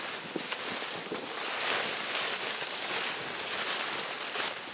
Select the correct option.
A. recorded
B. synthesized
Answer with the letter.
A